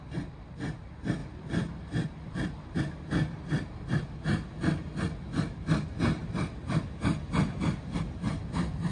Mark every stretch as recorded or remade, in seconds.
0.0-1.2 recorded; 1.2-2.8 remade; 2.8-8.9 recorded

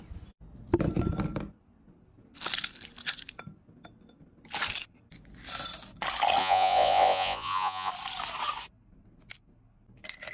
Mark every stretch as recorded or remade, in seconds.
0.0-6.4 recorded; 6.4-7.9 remade; 7.9-10.3 recorded

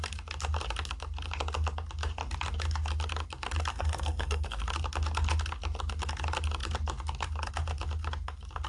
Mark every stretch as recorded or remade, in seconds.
0.0-3.7 recorded; 3.7-4.6 remade; 4.6-8.7 recorded

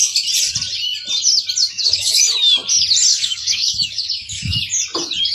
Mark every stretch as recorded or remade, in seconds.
0.0-1.7 recorded; 1.7-2.2 remade; 2.2-3.1 recorded; 3.1-4.6 remade; 4.6-5.3 recorded

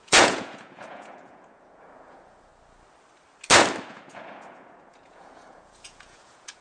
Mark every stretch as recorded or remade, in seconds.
0.0-2.5 remade; 2.5-3.9 recorded; 3.9-6.6 remade